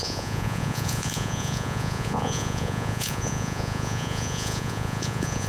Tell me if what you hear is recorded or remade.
remade